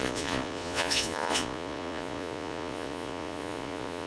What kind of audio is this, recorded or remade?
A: remade